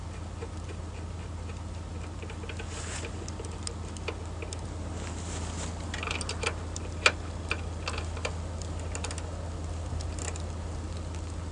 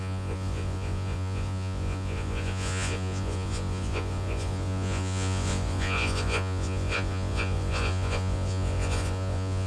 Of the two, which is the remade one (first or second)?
second